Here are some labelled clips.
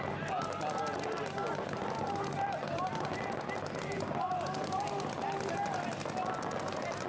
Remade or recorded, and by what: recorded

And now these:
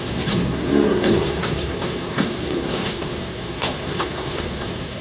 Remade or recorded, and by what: remade, codec, SNAC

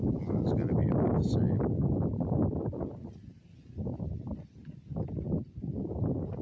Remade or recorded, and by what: recorded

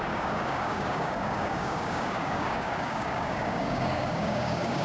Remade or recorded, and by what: remade, codec, DAC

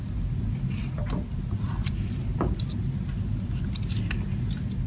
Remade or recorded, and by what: recorded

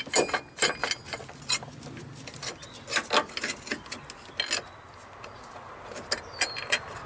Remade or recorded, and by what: recorded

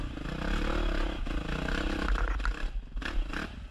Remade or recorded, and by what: recorded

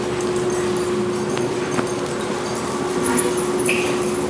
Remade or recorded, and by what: recorded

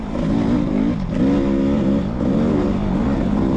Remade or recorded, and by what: recorded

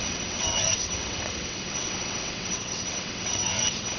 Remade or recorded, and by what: remade, vocoder, WaveNeXt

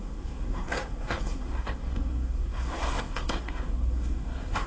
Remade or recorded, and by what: remade, codec, SNAC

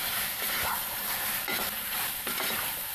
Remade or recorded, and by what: remade, vocoder, BigVGAN v2